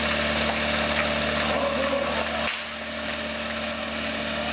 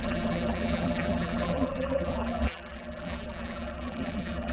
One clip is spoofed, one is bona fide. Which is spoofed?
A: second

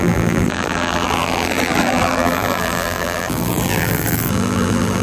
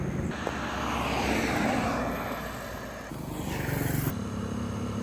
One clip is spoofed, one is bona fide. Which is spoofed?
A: first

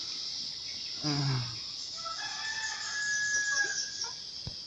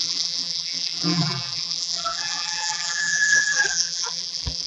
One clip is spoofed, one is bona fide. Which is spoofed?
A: second